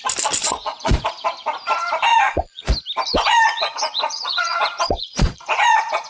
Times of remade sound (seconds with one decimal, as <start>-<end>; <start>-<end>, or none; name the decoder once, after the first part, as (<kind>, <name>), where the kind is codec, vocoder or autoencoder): 0.4-1.0 (vocoder, Vocos); 2.1-2.7; 3.1-6.1